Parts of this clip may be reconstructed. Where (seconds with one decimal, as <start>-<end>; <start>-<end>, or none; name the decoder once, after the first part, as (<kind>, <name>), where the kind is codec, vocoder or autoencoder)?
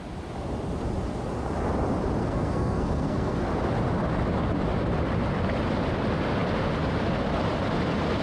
2.2-3.4 (codec, SNAC)